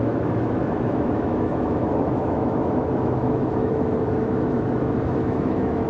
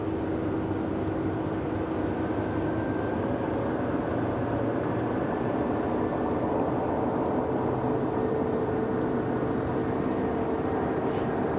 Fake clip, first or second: first